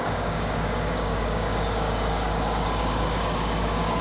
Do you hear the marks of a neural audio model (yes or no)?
yes